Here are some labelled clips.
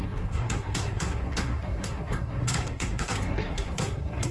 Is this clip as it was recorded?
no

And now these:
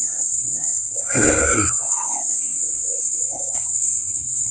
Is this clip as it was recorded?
no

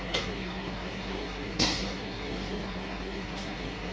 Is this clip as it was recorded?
no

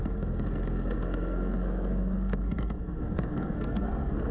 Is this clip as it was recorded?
no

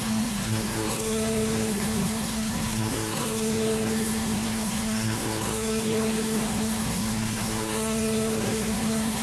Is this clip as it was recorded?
no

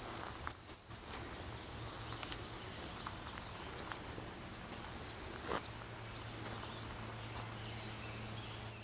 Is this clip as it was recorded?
yes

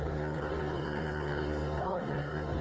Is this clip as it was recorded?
no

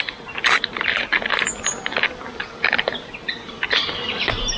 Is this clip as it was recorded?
yes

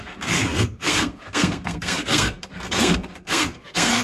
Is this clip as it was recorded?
no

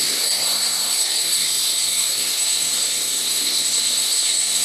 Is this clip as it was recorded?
no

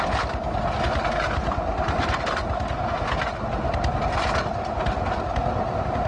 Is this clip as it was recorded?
yes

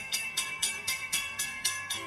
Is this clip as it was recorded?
no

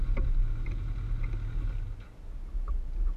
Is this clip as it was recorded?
yes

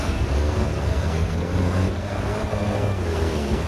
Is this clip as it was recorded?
no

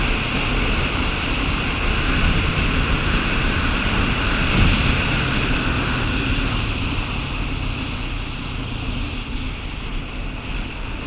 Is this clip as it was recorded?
yes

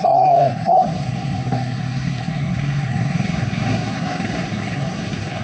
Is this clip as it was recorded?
no